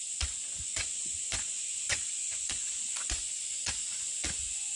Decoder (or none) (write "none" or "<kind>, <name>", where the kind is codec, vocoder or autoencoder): vocoder, Vocos